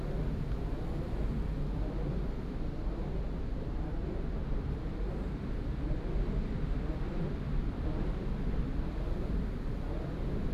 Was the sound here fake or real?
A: real